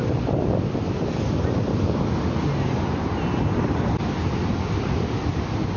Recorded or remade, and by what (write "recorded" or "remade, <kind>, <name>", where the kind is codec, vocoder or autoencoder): recorded